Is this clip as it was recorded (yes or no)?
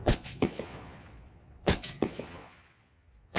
no